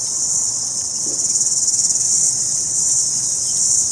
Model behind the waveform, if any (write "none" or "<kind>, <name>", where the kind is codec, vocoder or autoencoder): vocoder, WaveNeXt